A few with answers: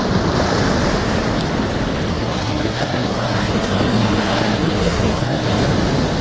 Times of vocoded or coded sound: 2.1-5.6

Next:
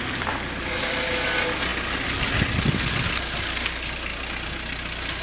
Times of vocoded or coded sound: none

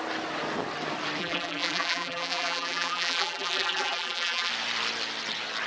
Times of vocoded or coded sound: 1.2-4.5

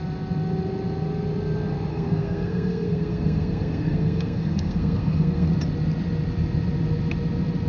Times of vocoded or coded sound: 1.9-5.5

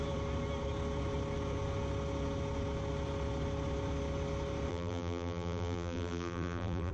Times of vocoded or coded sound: 4.7-6.9

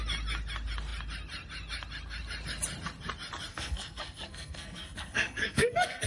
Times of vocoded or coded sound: 3.5-6.1